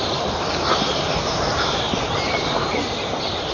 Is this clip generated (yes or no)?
yes